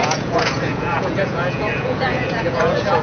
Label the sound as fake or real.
fake